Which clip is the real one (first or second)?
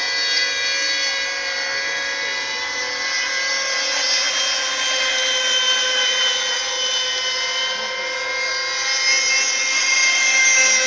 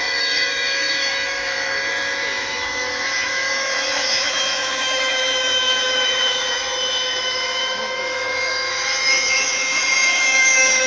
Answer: first